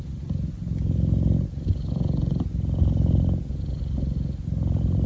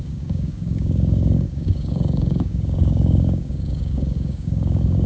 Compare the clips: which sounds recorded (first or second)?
first